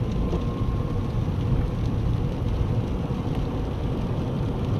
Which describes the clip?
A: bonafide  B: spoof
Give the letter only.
B